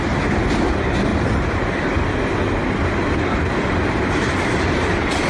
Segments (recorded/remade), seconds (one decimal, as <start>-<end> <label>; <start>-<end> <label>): 0.0-1.1 remade; 1.1-3.9 recorded; 3.9-5.3 remade